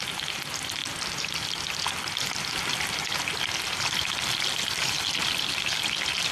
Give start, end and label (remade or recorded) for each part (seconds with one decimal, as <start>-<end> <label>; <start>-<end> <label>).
0.0-6.3 recorded